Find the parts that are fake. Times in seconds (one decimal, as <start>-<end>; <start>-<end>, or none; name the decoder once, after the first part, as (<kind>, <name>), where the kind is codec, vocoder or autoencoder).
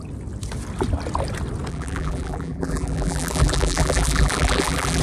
1.7-5.0 (vocoder, BigVGAN v2)